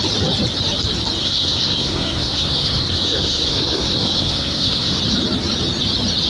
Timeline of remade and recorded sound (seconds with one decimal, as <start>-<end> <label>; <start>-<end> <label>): 0.0-1.2 recorded; 1.2-5.0 remade; 5.0-6.3 recorded